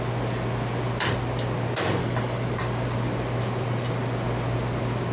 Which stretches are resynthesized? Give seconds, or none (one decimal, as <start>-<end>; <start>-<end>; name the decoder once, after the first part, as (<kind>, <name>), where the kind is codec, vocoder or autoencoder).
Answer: 2.0-2.6 (codec, DAC)